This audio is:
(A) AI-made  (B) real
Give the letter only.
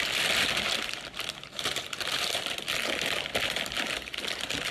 A